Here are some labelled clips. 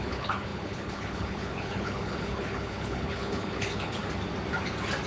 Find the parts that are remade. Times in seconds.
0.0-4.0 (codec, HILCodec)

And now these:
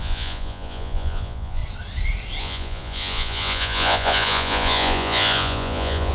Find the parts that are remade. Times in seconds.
0.0-1.6 (vocoder, Vocos); 2.4-6.1

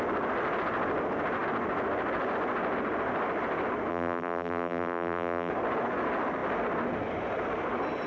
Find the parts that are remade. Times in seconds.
3.9-5.5 (vocoder, BigVGAN v2)

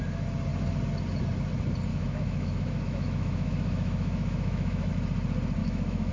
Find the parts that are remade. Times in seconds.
1.9-4.9 (autoencoder, DAC-VAE); 5.6-6.1

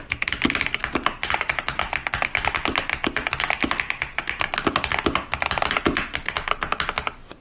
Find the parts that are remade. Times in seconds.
none

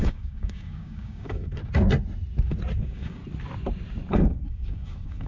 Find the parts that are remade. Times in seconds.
0.0-1.6 (codec, DAC); 2.8-3.2; 4.1-5.3